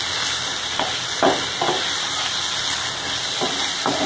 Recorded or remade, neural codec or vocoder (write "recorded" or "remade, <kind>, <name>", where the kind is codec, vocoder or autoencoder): recorded